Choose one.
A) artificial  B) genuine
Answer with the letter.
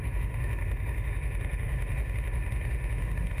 A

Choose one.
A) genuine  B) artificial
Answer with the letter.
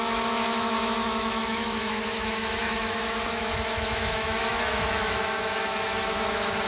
B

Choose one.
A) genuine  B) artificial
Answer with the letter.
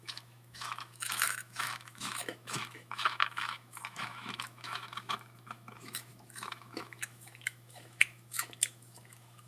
B